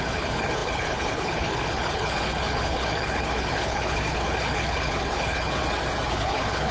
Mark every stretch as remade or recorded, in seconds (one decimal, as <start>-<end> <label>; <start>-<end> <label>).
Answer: 0.0-5.6 remade; 5.6-6.1 recorded; 6.1-6.7 remade